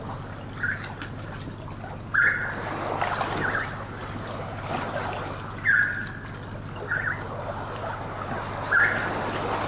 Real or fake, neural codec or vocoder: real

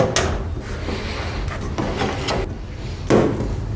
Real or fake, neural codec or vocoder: real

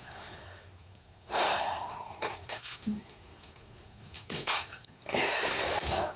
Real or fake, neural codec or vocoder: fake, codec, SNAC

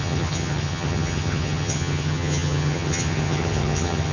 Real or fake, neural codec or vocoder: fake, vocoder, HiFi-GAN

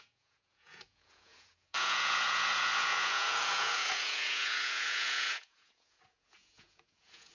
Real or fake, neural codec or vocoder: fake, vocoder, Vocos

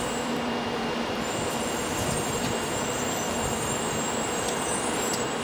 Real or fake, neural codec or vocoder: fake, vocoder, BigVGAN v2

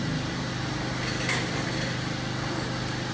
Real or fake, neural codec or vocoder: real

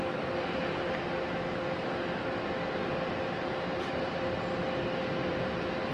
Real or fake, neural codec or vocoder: real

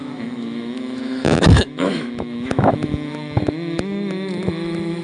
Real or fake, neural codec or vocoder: fake, autoencoder, DAC-VAE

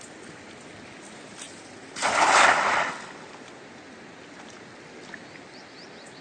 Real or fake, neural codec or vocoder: real